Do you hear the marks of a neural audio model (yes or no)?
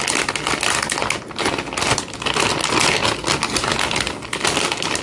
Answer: no